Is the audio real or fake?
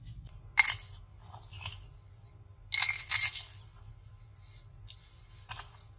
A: real